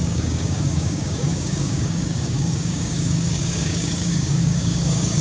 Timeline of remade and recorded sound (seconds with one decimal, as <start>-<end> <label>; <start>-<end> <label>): 0.0-5.2 remade